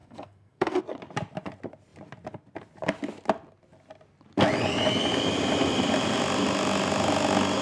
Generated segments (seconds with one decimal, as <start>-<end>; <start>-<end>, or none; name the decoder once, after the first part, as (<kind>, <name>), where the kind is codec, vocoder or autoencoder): 0.0-0.8 (codec, SNAC)